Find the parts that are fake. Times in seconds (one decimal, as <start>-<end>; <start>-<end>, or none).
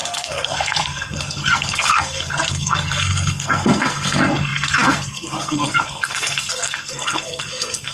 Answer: 0.0-7.9